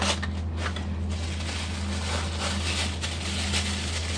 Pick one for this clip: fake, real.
real